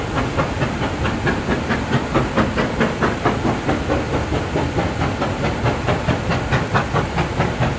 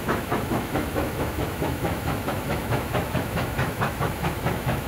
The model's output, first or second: second